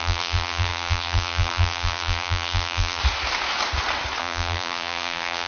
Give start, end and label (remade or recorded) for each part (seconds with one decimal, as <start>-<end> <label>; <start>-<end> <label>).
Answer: 0.0-3.0 remade; 3.0-4.2 recorded; 4.2-5.5 remade